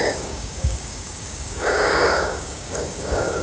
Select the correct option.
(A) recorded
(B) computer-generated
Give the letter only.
B